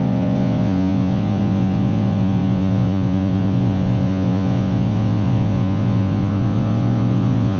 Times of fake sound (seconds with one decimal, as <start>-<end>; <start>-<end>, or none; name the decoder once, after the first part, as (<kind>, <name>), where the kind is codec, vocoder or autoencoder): 0.0-7.6 (vocoder, Vocos)